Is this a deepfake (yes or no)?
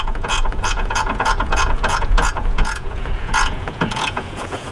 yes